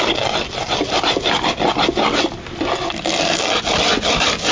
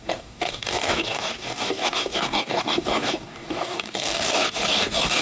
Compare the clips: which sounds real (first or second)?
first